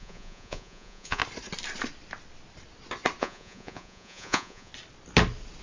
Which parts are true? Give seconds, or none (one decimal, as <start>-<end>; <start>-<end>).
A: 1.2-3.2; 4.7-5.6